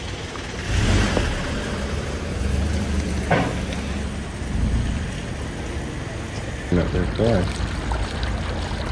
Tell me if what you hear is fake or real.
real